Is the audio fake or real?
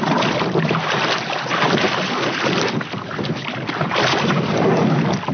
real